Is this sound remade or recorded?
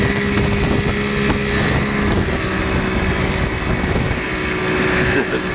recorded